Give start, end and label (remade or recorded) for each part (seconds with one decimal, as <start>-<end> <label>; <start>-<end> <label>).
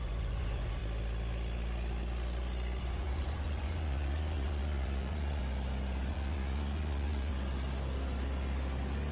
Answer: 0.0-0.8 remade; 0.8-2.8 recorded; 2.8-5.4 remade; 5.4-6.1 recorded; 6.1-7.3 remade; 7.3-9.1 recorded